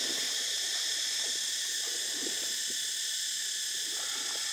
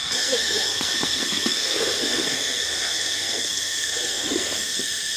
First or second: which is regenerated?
second